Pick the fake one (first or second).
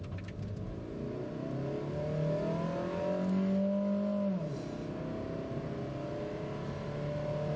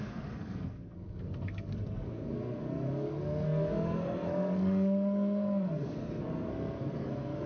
second